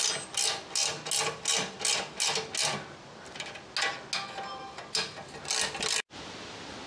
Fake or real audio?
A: real